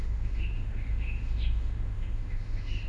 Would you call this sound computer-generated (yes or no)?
yes